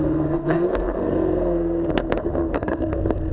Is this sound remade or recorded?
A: remade